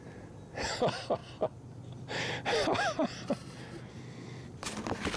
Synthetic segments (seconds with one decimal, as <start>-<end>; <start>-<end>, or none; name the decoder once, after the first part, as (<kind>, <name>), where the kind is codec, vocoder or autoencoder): 3.9-4.5 (codec, SNAC)